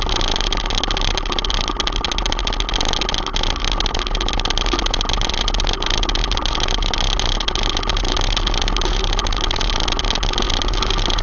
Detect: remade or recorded recorded